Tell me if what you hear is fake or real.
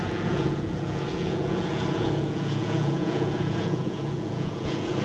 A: fake